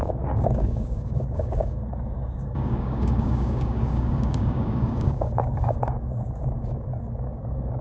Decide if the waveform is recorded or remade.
remade